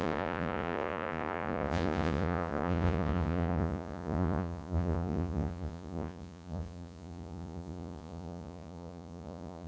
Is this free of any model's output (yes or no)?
no